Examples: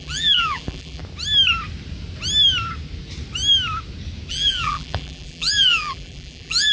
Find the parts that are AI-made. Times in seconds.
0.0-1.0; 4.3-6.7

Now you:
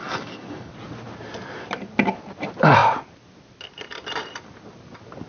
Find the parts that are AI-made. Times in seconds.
0.0-0.7